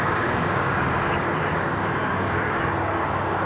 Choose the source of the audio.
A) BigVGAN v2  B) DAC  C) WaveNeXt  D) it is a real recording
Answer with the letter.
B